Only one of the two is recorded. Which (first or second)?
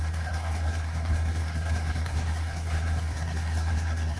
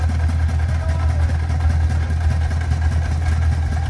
second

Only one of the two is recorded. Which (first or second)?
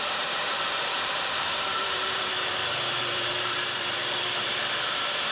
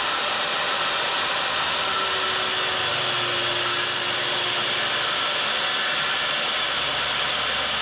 second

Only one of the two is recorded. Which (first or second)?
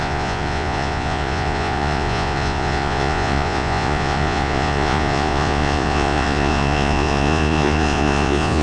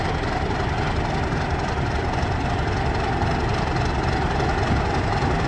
second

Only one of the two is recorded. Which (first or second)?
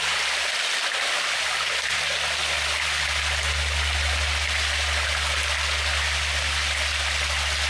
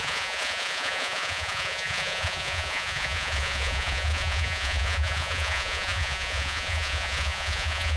first